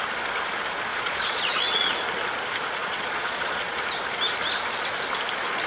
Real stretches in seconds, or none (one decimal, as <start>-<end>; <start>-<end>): 0.0-0.9; 1.9-2.8; 3.8-5.7